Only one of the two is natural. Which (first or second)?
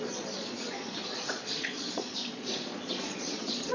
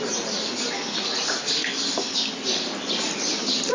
second